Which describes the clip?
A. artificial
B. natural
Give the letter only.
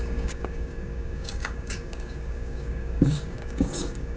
A